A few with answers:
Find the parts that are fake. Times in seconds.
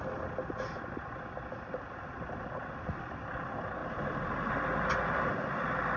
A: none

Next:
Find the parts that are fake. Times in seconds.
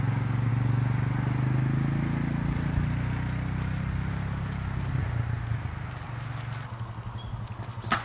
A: none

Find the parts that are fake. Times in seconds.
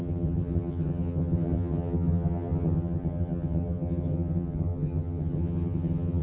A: 0.0-6.2 (vocoder, HiFi-GAN)